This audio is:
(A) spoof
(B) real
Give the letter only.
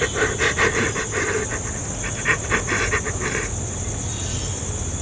B